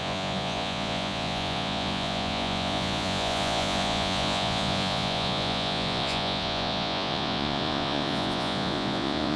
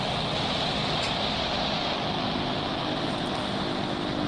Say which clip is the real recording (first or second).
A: second